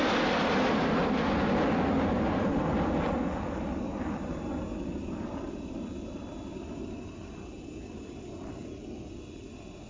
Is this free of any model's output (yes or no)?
yes